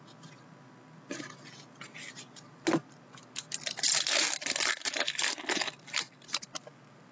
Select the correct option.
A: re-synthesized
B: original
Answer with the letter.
B